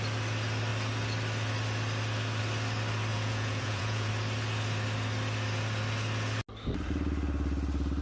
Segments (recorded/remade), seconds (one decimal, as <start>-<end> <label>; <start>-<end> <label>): 0.0-3.1 recorded; 3.1-4.1 remade; 4.1-8.0 recorded